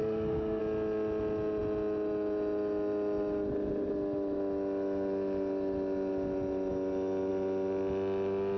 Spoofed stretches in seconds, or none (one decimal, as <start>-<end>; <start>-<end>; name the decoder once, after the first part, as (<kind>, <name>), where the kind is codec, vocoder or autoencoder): 0.0-0.6 (codec, SNAC)